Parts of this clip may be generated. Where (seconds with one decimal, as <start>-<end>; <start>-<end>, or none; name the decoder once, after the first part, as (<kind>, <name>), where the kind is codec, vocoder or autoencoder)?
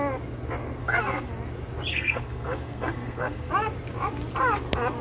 0.8-1.3 (codec, SNAC); 1.9-3.5